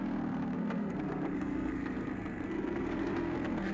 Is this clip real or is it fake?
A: fake